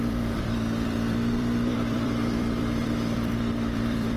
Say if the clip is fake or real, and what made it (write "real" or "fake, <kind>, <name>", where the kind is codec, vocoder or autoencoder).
fake, vocoder, BigVGAN v2